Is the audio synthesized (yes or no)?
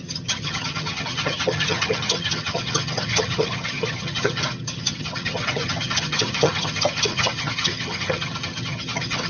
yes